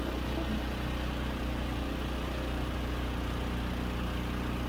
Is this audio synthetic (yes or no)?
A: no